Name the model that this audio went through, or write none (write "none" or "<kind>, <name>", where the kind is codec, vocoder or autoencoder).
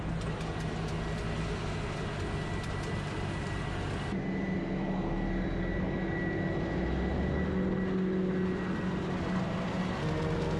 none